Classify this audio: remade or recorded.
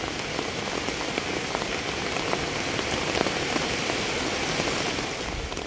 recorded